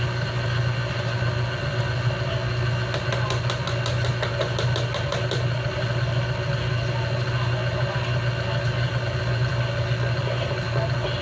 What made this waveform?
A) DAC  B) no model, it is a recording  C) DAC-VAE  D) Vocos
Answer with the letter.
B